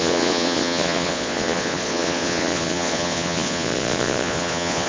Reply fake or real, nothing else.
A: fake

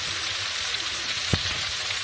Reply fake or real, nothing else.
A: fake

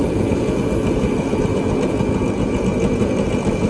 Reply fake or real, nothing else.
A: fake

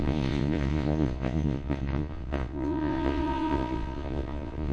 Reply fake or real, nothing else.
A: fake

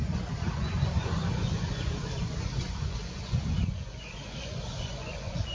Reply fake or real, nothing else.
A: fake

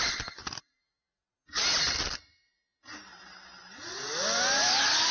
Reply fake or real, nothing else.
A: real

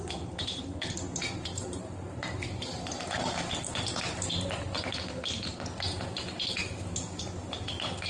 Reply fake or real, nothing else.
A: real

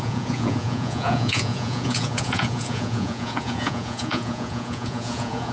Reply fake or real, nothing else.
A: fake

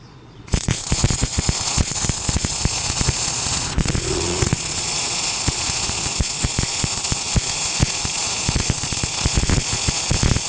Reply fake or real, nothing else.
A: fake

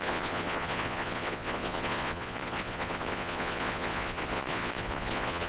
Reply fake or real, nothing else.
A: fake